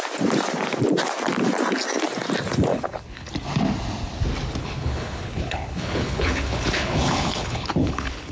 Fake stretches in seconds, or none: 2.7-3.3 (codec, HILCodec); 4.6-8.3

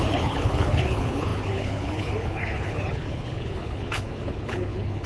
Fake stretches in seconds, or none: 0.0-5.1 (codec, HILCodec)

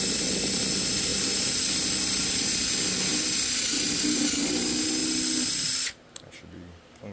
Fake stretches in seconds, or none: 1.1-1.6 (vocoder, BigVGAN v2)